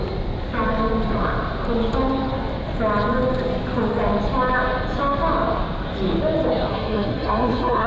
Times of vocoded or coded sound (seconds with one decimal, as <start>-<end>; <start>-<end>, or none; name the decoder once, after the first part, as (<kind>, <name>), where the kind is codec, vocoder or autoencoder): 6.7-7.9 (codec, SNAC)